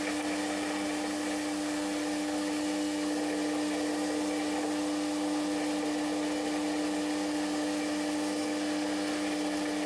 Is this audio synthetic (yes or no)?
no